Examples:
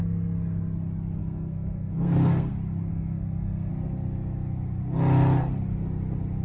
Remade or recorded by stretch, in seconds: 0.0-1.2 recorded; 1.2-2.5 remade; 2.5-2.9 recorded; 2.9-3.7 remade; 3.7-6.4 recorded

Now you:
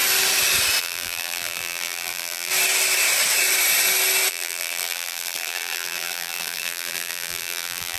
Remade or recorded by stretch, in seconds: 0.0-0.8 recorded; 0.8-2.5 remade; 2.5-4.3 recorded; 4.3-8.0 remade

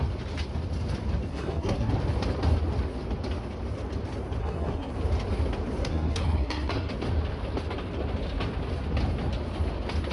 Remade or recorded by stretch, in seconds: 0.0-1.3 recorded; 1.3-1.9 remade; 1.9-4.4 recorded; 4.4-4.9 remade; 4.9-5.8 recorded; 5.8-6.9 remade; 6.9-10.1 recorded

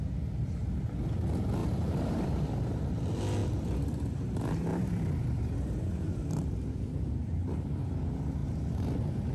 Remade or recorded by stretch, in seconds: 0.0-1.6 recorded; 1.6-2.8 remade; 2.8-4.7 recorded; 4.7-7.8 remade; 7.8-8.4 recorded; 8.4-9.3 remade

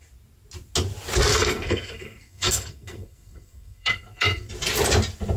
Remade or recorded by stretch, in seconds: 0.0-1.3 recorded; 1.3-4.5 remade; 4.5-5.4 recorded